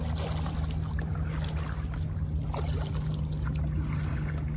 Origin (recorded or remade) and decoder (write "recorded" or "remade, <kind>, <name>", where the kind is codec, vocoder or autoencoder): recorded